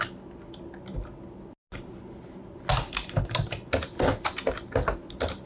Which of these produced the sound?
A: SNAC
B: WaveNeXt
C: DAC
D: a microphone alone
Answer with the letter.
D